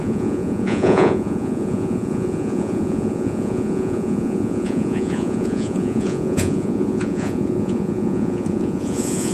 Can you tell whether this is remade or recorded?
remade